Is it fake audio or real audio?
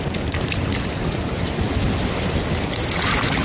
real